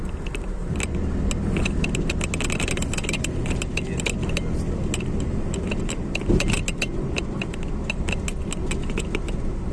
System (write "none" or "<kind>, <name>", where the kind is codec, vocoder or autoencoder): none